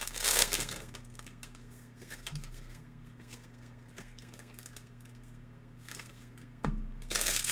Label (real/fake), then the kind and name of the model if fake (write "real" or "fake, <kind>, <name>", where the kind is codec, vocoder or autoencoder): fake, codec, SNAC